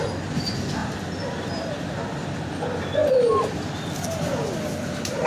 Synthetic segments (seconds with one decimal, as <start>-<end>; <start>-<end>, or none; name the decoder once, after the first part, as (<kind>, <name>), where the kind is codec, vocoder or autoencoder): 0.8-1.8 (vocoder, BigVGAN v2)